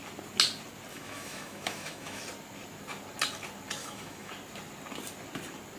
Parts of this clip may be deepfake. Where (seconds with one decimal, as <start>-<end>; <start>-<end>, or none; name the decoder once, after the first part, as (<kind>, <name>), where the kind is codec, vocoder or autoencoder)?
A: 0.9-2.2 (autoencoder, DAC-VAE); 3.8-4.3